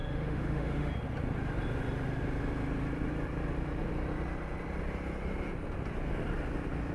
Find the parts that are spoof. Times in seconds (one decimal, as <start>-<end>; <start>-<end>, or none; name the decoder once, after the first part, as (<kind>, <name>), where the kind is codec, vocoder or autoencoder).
0.0-0.9 (autoencoder, DAC-VAE)